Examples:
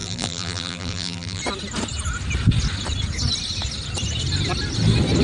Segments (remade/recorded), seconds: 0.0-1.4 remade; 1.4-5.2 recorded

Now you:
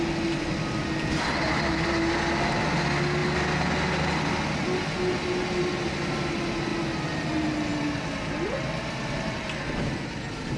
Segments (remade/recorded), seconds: 0.0-10.6 recorded

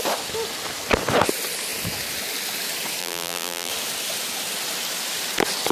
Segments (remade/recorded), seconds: 0.0-3.0 recorded; 3.0-3.7 remade; 3.7-5.7 recorded

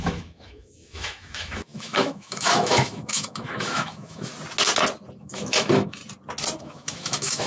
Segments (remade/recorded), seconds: 0.0-4.3 remade; 4.3-5.2 recorded; 5.2-6.0 remade; 6.0-6.6 recorded; 6.6-7.5 remade

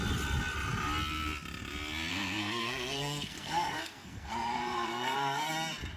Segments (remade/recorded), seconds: 0.0-2.1 recorded; 2.1-5.5 remade; 5.5-6.0 recorded

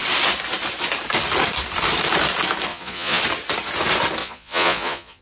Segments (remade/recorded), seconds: 0.0-2.7 recorded; 2.7-3.2 remade; 3.2-4.2 recorded; 4.2-5.2 remade

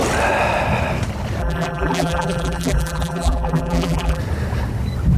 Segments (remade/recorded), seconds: 0.0-1.4 recorded; 1.4-4.2 remade; 4.2-5.2 recorded